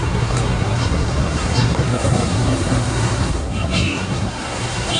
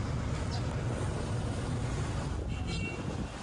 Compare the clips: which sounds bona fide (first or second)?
second